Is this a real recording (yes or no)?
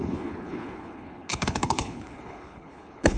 no